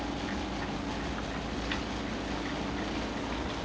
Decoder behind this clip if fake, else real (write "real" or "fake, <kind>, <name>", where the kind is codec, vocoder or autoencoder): real